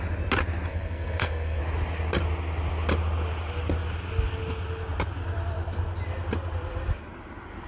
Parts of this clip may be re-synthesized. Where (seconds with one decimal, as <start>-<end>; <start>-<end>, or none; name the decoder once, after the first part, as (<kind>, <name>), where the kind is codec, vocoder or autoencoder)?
0.7-1.6 (codec, SNAC)